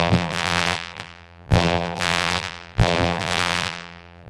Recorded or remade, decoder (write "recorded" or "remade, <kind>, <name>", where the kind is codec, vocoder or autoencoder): remade, vocoder, BigVGAN v2